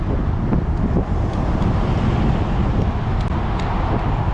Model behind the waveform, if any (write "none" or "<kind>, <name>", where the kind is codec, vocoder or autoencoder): none